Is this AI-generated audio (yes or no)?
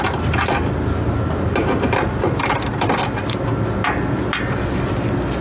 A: no